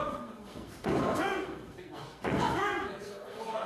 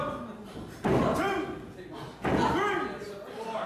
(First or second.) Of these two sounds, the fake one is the first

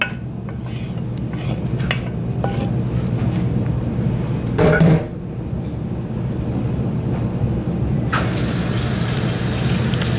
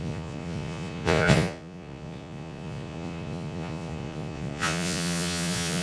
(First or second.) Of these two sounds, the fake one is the second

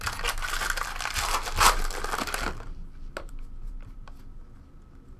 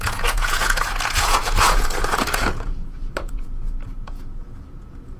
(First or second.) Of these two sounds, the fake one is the second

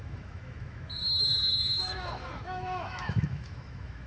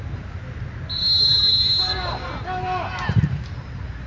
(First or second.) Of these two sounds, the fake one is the first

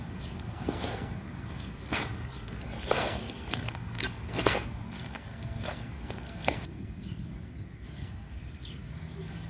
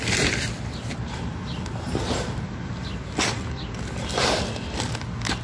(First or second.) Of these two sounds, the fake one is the first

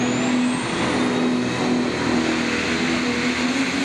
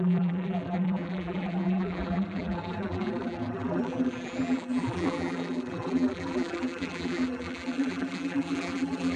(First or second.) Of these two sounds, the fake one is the second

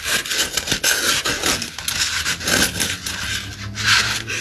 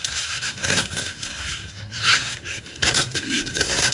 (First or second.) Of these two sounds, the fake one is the second